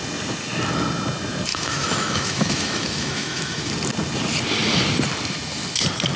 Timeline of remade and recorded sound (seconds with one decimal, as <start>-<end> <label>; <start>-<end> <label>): 0.0-1.5 recorded; 1.5-3.7 remade; 3.7-6.2 recorded